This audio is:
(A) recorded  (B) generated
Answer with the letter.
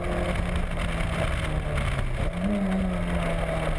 A